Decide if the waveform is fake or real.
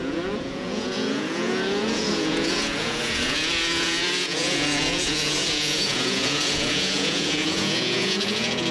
fake